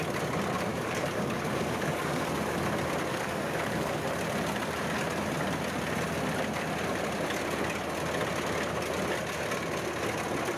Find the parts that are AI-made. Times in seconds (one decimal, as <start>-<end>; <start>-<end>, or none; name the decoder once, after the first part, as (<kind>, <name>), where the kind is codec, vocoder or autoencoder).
0.7-2.3 (codec, DAC); 3.1-4.0